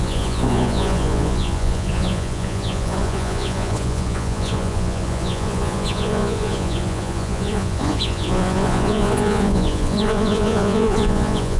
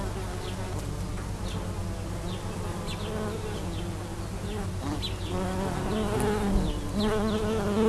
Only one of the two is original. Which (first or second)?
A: second